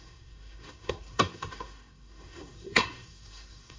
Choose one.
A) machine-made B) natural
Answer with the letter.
A